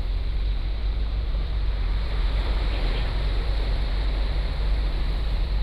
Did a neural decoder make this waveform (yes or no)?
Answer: yes